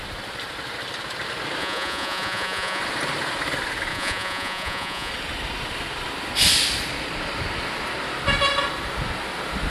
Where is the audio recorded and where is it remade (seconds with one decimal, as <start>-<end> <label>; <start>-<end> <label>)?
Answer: 0.0-1.6 recorded; 1.6-2.8 remade; 2.8-3.9 recorded; 3.9-5.1 remade; 5.1-9.7 recorded